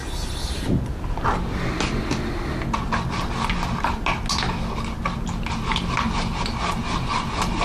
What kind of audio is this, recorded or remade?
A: recorded